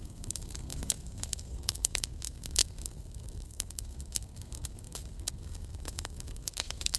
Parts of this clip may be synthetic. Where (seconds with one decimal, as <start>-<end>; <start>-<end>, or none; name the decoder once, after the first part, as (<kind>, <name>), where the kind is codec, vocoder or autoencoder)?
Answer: 0.0-7.0 (codec, SNAC)